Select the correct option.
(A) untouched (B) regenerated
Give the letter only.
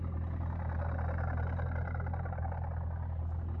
A